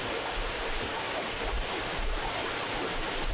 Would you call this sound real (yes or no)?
yes